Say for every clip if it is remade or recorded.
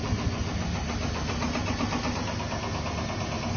recorded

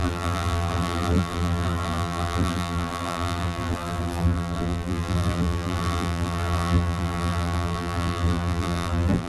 remade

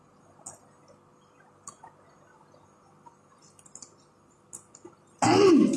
recorded